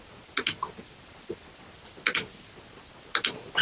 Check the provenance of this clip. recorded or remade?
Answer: recorded